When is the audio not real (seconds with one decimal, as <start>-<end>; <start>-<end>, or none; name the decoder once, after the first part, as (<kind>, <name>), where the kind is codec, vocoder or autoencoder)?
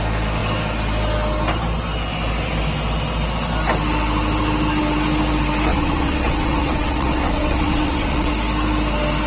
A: 5.7-8.3 (vocoder, WaveNeXt)